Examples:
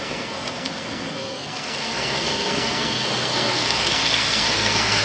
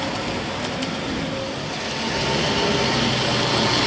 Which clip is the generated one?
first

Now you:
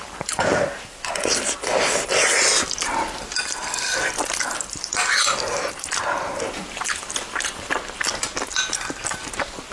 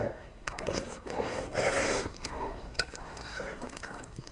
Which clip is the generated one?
second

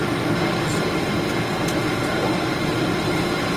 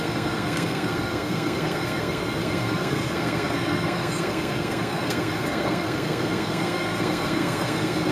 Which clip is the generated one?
second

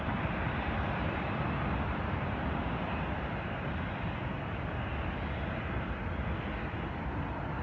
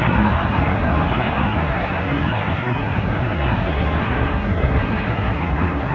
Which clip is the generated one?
second